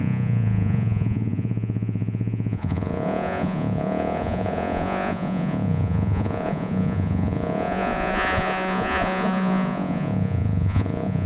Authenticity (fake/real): fake